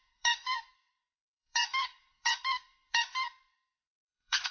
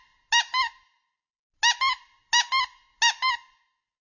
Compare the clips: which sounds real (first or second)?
second